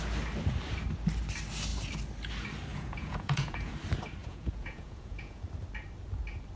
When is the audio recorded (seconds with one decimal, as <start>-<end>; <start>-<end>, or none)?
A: 0.0-2.7; 3.7-4.2; 5.4-6.6